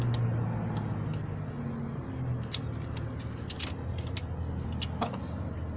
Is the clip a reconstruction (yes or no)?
no